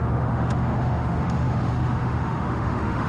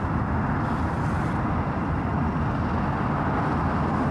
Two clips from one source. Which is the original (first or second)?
second